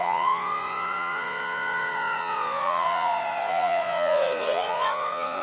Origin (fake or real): fake